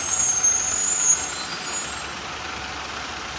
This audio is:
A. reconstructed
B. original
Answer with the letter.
B